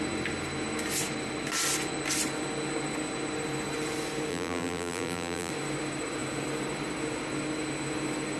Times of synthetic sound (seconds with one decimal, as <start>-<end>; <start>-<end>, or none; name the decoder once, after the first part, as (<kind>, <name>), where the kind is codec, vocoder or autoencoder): 4.3-5.5 (vocoder, BigVGAN v2)